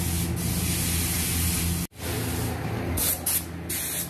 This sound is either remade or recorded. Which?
recorded